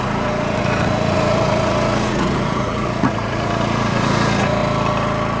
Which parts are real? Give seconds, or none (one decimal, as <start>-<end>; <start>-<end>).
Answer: 4.6-5.4